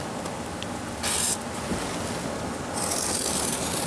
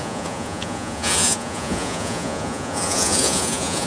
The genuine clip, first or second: first